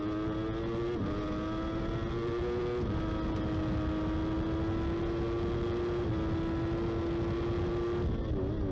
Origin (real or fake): real